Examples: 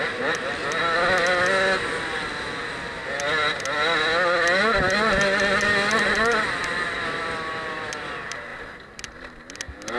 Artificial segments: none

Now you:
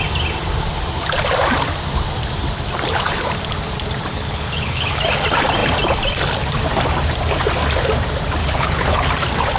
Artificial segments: 4.1-5.0 (codec, HILCodec); 8.4-9.1

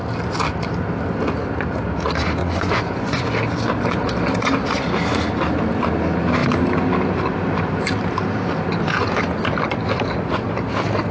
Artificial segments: 2.4-3.3 (vocoder, Vocos)